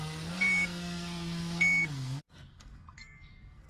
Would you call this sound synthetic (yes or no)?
yes